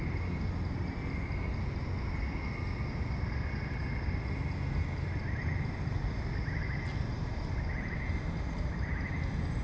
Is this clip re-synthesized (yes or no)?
no